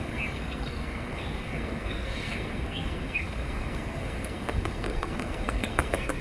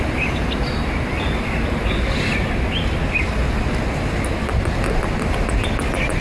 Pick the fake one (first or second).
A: first